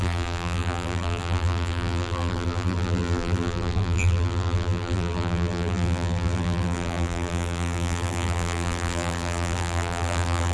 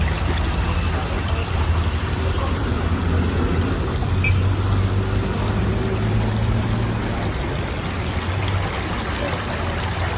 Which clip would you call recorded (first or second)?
second